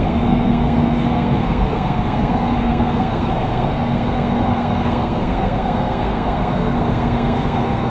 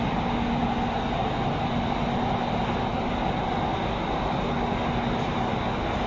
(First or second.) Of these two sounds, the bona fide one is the second